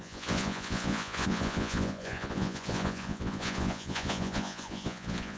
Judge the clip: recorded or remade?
remade